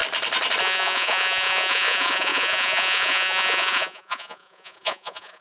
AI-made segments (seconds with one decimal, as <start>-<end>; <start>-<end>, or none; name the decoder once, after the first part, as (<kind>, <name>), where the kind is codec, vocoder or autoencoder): 0.6-5.4 (vocoder, Vocos)